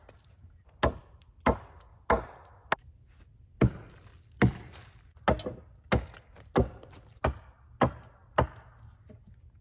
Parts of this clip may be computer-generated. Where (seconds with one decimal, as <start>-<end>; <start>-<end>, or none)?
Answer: none